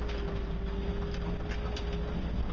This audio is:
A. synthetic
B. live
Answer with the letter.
B